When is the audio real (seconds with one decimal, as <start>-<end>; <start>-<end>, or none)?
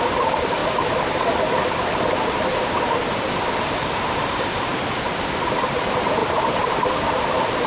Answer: 0.6-2.1; 3.0-3.6